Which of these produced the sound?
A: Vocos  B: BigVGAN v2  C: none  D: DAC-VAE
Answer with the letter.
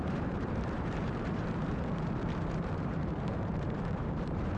B